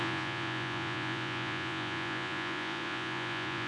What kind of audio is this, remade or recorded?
remade